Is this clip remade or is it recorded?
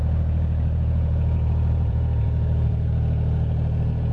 remade